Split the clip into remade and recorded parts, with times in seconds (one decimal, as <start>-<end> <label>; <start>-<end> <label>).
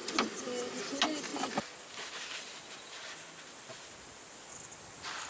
0.0-5.3 recorded